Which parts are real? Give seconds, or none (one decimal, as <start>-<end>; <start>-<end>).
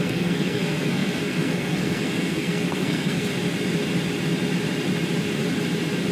3.3-6.1